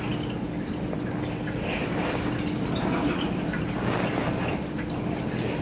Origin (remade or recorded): recorded